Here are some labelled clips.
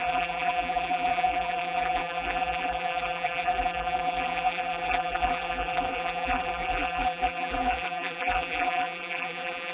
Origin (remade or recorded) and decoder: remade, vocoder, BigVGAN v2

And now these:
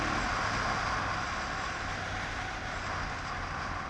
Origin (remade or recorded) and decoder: recorded